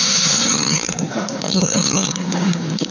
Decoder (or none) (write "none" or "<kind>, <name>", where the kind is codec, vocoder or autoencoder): codec, SNAC